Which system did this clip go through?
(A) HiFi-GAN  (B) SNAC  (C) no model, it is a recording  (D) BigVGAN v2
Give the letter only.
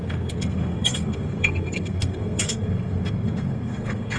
B